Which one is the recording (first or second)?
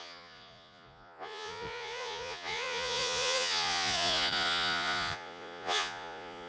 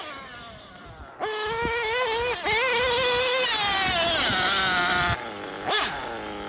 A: second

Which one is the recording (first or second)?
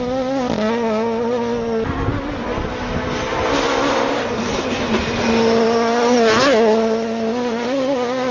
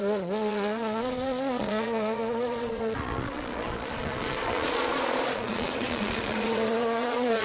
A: first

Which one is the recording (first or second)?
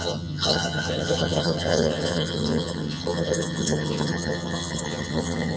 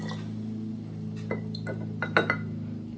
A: second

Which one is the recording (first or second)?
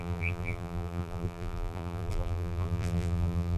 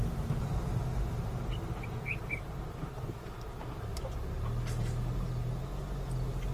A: second